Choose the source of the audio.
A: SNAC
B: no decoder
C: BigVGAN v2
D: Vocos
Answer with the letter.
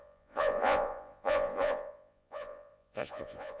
D